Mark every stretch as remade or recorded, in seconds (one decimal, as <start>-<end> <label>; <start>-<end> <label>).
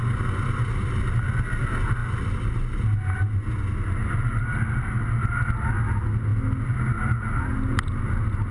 0.0-8.5 recorded